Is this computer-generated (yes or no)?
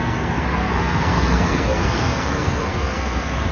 yes